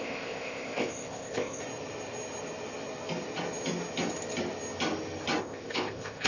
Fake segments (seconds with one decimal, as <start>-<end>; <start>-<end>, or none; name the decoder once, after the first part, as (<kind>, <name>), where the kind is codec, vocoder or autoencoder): 0.0-1.6 (codec, ZipCodec); 5.4-6.3